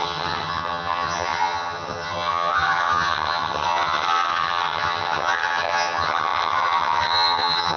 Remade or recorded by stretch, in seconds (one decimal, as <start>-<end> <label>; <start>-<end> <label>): 0.0-7.8 remade